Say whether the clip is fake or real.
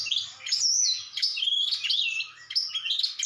real